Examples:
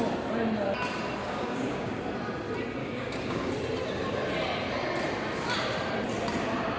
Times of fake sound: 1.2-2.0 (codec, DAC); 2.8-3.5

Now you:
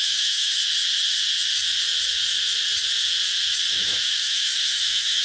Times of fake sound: 0.0-0.6 (autoencoder, DAC-VAE); 3.7-5.2

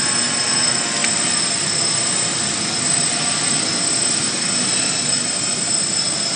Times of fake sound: none

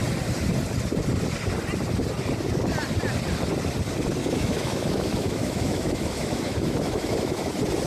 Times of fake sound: 4.2-7.5 (autoencoder, DAC-VAE)

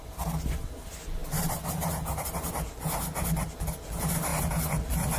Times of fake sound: none

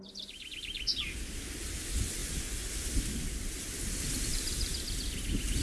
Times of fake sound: 2.2-3.1 (vocoder, BigVGAN v2); 4.3-4.9

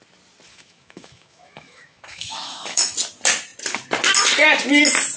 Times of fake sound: 0.5-2.9 (autoencoder, DAC-VAE)

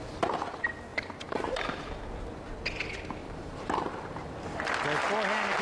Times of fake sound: 0.9-1.8 (vocoder, BigVGAN v2); 3.2-4.6